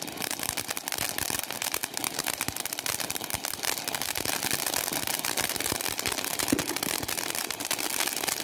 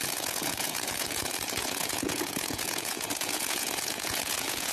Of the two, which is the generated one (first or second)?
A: second